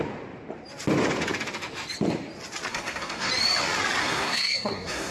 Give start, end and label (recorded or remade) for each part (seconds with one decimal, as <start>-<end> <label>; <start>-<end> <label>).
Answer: 0.0-2.7 recorded; 2.7-3.3 remade; 3.3-4.0 recorded; 4.0-5.1 remade